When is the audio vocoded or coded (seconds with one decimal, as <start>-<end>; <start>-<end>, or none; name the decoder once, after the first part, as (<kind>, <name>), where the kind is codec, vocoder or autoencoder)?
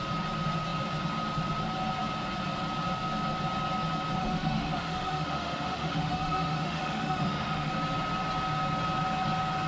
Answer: 4.2-7.7 (autoencoder, DAC-VAE)